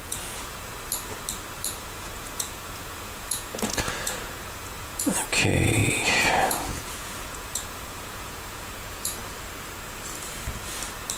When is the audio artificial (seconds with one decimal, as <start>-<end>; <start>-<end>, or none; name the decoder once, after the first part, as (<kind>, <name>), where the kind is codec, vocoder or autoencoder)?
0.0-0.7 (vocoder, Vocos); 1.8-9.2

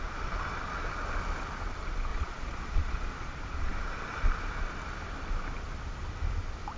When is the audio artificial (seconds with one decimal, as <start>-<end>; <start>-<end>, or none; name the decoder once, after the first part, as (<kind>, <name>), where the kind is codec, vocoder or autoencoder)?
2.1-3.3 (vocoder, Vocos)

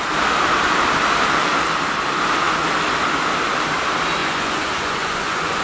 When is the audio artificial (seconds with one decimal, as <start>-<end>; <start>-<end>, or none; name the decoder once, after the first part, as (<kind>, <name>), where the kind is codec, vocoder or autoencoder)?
4.2-5.6 (vocoder, Vocos)

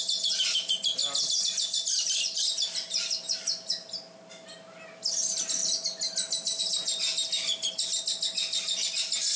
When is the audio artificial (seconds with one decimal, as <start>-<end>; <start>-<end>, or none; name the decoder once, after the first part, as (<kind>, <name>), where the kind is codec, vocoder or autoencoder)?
none

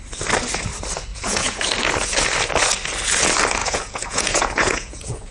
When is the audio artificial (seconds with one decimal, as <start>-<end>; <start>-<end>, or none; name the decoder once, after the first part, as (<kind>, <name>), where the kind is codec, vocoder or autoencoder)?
1.1-1.6 (vocoder, Vocos); 3.6-5.3